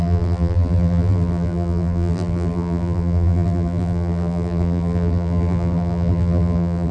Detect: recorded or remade remade